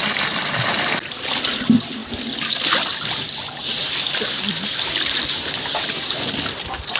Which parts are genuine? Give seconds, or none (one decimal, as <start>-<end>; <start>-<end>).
0.0-7.0